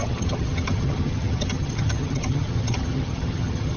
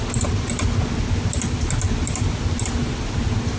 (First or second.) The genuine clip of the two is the second